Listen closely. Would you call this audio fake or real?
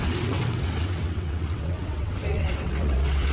fake